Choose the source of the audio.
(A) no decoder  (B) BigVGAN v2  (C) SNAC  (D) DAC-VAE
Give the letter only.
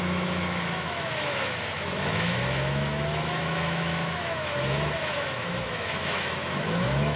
D